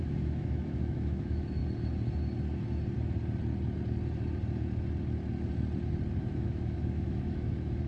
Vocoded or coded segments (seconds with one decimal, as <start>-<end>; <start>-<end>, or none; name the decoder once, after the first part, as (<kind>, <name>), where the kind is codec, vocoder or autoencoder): 0.0-1.6 (autoencoder, DAC-VAE); 6.2-7.9